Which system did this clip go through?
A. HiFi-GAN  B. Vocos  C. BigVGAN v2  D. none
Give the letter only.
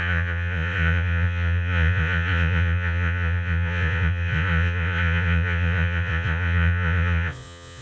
B